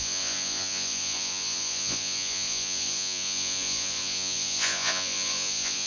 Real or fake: fake